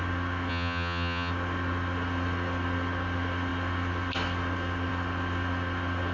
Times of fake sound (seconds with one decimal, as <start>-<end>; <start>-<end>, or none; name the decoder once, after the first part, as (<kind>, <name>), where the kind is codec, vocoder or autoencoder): 0.5-1.3 (vocoder, HiFi-GAN)